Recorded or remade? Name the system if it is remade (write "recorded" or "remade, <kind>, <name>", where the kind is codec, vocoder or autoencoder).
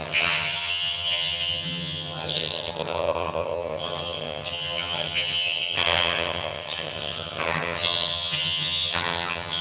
remade, vocoder, HiFi-GAN